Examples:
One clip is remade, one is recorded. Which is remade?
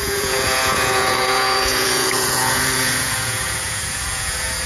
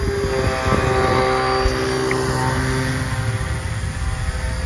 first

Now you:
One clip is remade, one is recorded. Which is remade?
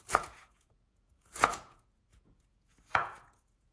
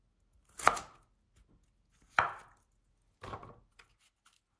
first